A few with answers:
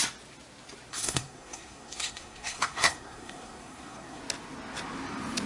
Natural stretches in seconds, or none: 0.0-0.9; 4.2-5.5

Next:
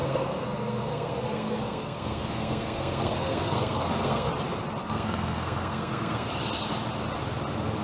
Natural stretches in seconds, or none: 4.3-4.8; 6.3-7.8

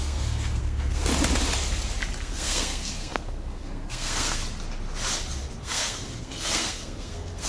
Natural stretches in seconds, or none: 1.1-2.2; 4.4-5.6

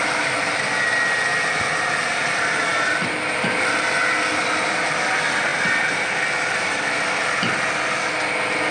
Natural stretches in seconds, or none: 0.0-8.7

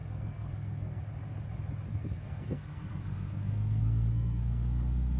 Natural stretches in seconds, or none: 1.0-1.9

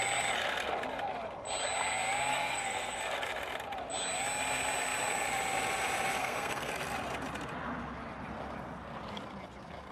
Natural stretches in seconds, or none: 0.0-2.3; 3.0-6.2; 6.7-9.9

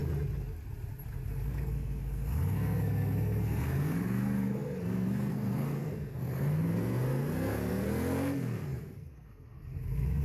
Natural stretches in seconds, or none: 0.0-1.3

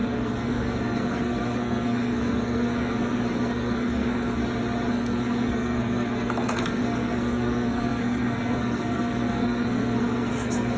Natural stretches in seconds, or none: 4.4-4.9